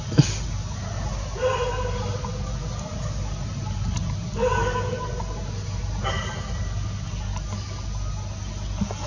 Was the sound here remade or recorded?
recorded